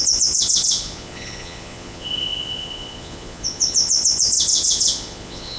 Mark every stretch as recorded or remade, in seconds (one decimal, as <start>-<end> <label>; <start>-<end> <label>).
0.0-5.6 remade